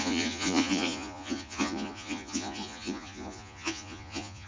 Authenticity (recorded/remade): remade